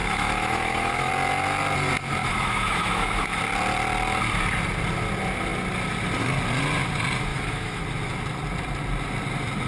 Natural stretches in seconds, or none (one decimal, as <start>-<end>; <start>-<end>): 1.1-2.2; 3.4-7.3; 7.8-9.7